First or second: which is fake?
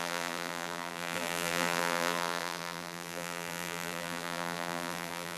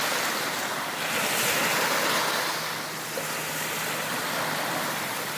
first